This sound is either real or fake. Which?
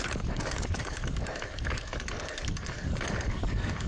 fake